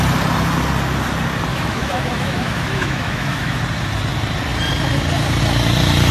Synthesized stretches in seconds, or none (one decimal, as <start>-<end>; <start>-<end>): 1.5-3.6